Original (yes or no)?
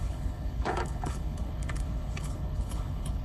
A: no